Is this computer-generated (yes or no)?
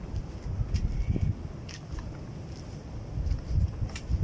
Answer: no